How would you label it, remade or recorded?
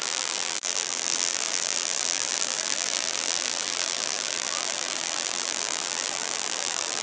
remade